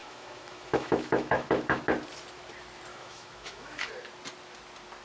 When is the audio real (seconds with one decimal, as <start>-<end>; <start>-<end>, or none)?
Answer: 1.8-2.9; 3.9-5.0